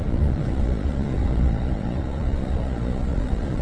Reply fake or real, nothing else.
fake